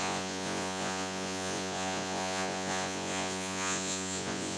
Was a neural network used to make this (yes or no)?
yes